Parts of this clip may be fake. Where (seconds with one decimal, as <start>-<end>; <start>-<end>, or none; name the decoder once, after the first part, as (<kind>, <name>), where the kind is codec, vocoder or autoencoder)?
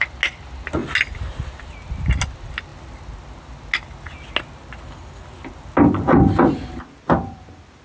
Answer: none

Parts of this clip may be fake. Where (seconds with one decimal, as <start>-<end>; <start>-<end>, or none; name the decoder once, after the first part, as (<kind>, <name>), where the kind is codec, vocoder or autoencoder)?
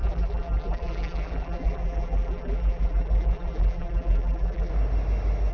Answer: 0.0-4.7 (vocoder, BigVGAN v2)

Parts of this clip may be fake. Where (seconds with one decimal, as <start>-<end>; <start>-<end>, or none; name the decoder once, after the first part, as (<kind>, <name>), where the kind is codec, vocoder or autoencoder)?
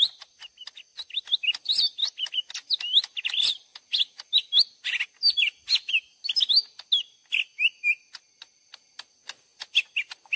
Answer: none